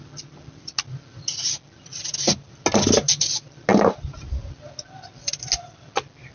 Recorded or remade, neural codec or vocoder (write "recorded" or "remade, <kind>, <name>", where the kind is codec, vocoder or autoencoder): recorded